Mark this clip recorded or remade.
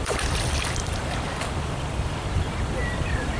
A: remade